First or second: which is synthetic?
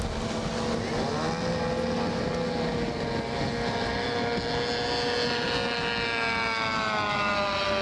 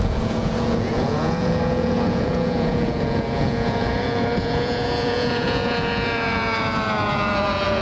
second